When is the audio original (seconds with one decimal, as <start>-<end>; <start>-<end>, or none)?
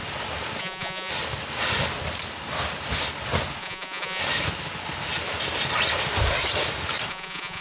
0.0-0.6; 1.1-3.6; 4.2-7.1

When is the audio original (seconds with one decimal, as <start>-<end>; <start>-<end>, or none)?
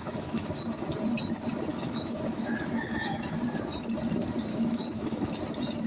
0.5-1.7; 3.4-4.5; 5.3-5.9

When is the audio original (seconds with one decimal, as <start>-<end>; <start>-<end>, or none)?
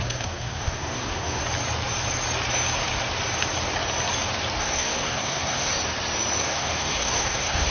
1.4-4.6; 5.7-6.4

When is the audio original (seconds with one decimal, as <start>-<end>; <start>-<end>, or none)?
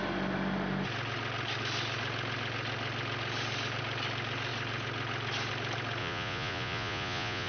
0.0-6.0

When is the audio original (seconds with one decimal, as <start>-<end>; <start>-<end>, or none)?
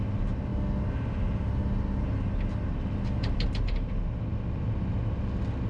0.0-5.7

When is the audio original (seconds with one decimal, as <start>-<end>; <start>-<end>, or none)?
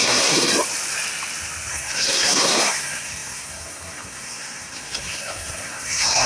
0.5-1.7